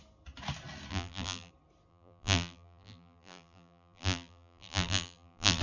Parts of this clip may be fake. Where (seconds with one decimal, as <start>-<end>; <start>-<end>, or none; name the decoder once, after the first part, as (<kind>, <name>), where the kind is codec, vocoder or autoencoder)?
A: 0.9-1.5 (vocoder, BigVGAN v2); 1.9-5.6